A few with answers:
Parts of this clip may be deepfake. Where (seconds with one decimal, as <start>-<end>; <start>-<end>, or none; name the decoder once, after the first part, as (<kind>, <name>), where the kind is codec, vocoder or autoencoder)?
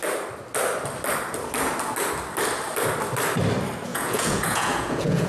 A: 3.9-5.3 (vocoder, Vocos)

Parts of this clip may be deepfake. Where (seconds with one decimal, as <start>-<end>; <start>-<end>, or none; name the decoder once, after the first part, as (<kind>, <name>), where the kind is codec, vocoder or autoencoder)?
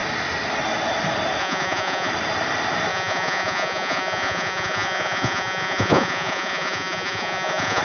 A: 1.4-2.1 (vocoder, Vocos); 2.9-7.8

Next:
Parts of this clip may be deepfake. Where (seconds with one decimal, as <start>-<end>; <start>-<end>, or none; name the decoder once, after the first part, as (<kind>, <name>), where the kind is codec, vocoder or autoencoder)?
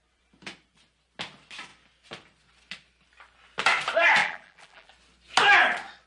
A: 4.2-4.9 (vocoder, BigVGAN v2)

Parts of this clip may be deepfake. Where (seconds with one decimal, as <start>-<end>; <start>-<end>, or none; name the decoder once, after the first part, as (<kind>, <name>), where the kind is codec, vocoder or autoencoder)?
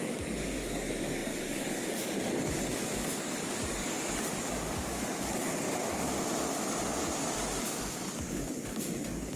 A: 0.0-6.1 (codec, DAC); 7.6-9.4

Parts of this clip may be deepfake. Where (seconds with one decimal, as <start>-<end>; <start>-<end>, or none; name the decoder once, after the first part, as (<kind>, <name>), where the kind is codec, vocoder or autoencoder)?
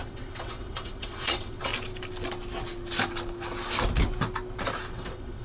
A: 0.0-1.7 (vocoder, WaveNeXt); 4.9-5.4